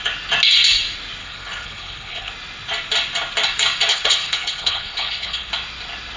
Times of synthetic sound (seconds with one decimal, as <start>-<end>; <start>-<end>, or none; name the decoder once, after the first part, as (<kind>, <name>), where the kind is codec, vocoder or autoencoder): 1.2-2.3 (codec, HILCodec); 3.9-5.5